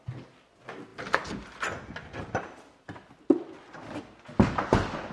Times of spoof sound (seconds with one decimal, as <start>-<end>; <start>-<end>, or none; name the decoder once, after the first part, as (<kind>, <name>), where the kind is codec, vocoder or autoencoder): 0.9-4.0 (vocoder, BigVGAN v2)